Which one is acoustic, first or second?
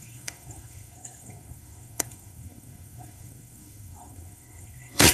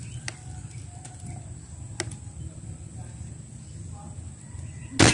second